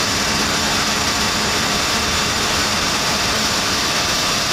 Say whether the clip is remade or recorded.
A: remade